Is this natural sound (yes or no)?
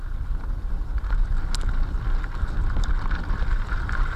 yes